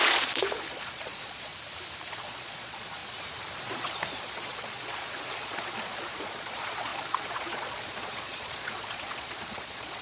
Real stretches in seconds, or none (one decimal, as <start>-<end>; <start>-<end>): 1.5-2.1; 3.0-3.6